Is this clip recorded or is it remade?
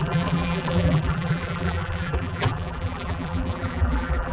remade